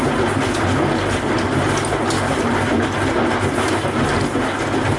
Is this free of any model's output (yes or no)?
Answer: yes